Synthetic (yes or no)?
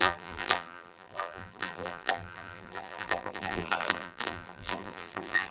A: yes